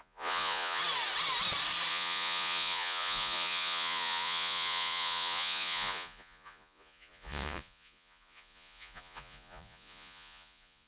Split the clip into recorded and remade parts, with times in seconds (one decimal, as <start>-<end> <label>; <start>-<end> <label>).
0.0-0.8 remade; 0.8-1.9 recorded; 1.9-10.9 remade